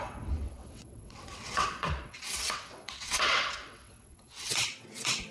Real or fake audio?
fake